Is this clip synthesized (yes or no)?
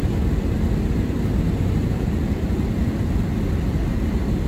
no